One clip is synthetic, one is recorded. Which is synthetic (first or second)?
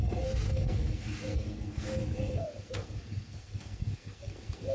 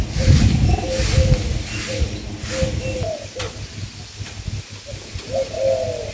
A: first